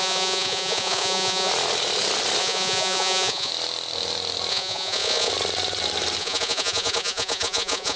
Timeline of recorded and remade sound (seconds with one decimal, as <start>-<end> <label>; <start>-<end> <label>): 0.0-1.5 remade; 1.5-2.4 recorded; 2.4-3.5 remade; 3.5-4.5 recorded; 4.5-5.3 remade; 5.3-6.2 recorded; 6.2-8.0 remade

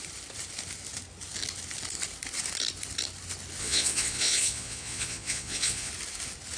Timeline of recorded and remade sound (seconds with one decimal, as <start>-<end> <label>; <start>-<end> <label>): 0.0-3.6 recorded; 3.6-5.9 remade; 5.9-6.6 recorded